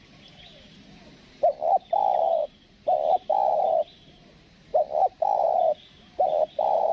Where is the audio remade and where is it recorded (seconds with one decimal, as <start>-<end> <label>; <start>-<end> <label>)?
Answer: 0.0-2.4 remade; 2.4-3.3 recorded; 3.3-6.9 remade